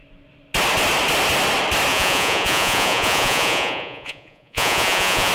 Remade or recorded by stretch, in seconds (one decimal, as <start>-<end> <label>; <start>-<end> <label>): 0.0-1.9 recorded; 1.9-5.3 remade